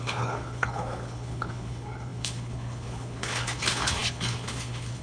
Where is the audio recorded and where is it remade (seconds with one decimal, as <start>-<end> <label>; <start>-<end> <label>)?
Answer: 0.0-5.0 remade